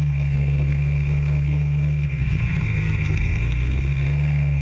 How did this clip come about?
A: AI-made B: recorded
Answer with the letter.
A